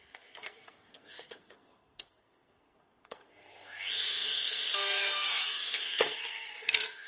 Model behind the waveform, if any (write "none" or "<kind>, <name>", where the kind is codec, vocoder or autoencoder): codec, SNAC